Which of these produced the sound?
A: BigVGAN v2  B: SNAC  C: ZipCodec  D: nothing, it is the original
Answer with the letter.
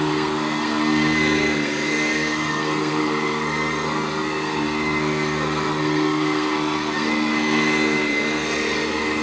B